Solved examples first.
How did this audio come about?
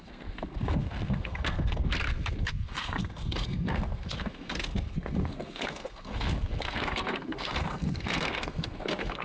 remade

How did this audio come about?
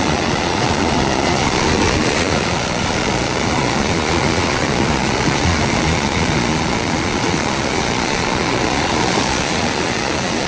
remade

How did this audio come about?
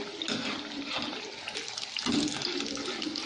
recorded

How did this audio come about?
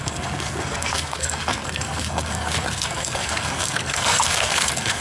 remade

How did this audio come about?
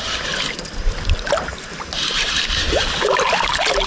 recorded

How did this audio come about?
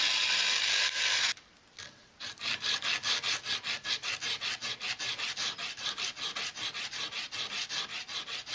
recorded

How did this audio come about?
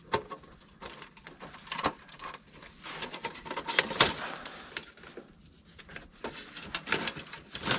recorded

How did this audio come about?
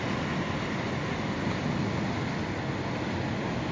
recorded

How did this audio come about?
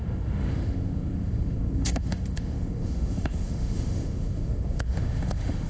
remade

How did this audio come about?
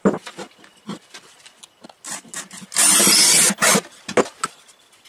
recorded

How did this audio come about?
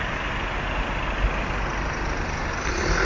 recorded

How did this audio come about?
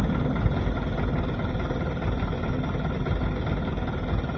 recorded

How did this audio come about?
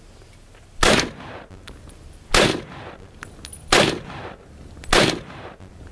recorded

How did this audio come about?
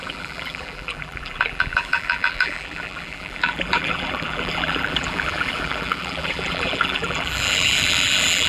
remade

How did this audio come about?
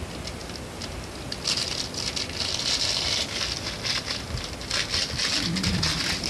recorded